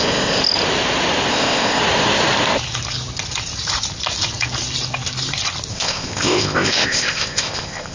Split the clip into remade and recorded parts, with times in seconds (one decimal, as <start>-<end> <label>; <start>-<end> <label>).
0.0-0.4 remade; 0.4-1.3 recorded; 1.3-1.8 remade; 1.8-5.7 recorded; 5.7-7.9 remade

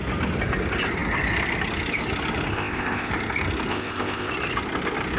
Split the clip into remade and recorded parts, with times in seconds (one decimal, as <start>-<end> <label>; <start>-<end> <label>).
0.0-2.5 recorded; 2.5-3.1 remade; 3.1-3.7 recorded; 3.7-4.3 remade; 4.3-5.2 recorded

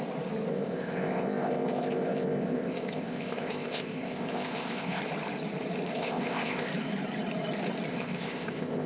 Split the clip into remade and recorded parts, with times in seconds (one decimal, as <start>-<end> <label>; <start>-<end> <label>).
0.0-0.5 recorded; 0.5-5.0 remade; 5.0-5.9 recorded; 5.9-6.7 remade; 6.7-7.9 recorded; 7.9-8.9 remade